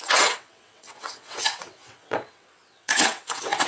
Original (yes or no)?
no